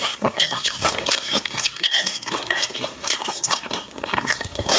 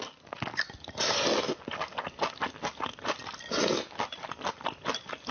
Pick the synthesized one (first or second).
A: first